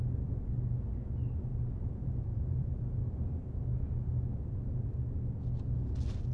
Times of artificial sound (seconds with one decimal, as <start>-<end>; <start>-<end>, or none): 1.5-2.8

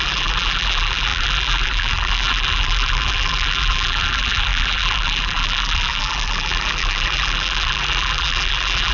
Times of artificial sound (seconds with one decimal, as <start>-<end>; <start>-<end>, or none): 0.0-8.9

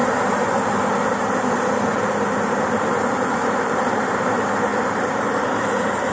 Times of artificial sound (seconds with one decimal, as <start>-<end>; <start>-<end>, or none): 0.0-6.1